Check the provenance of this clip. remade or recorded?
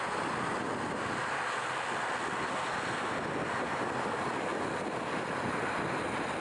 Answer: recorded